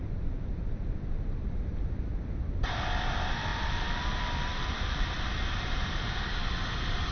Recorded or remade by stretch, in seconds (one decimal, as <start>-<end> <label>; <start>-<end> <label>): 0.0-1.6 remade; 1.6-3.5 recorded; 3.5-5.3 remade; 5.3-7.1 recorded